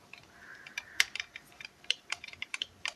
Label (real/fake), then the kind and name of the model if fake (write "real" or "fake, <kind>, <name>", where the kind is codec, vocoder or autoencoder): fake, vocoder, BigVGAN v2